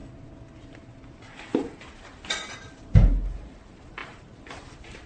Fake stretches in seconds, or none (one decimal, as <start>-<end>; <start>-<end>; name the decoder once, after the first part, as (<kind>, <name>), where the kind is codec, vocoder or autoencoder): 2.5-5.1 (vocoder, BigVGAN v2)